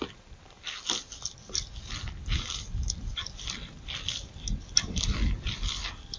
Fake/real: real